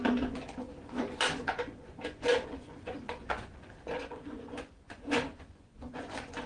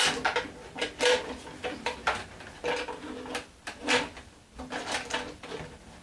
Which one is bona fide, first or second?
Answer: second